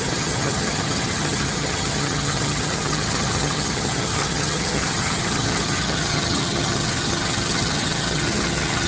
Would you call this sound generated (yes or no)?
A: yes